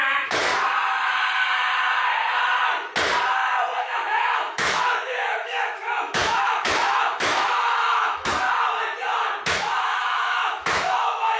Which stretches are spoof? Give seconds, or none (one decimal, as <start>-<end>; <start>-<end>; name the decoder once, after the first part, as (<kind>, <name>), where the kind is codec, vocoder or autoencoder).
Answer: 0.0-0.5 (autoencoder, DAC-VAE); 3.8-8.3; 9.5-11.4